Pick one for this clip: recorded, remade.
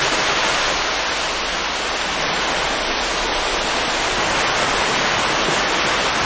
recorded